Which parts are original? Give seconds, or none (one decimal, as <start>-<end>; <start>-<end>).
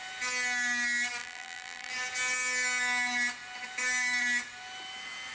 0.0-1.2; 1.9-5.3